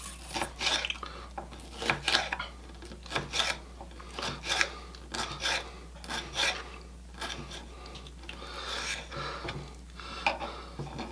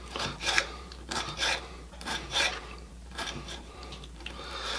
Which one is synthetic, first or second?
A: second